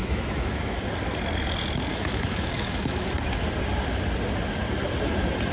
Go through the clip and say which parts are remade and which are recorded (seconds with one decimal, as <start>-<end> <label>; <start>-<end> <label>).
0.0-0.9 remade; 0.9-1.9 recorded; 1.9-3.1 remade; 3.1-5.5 recorded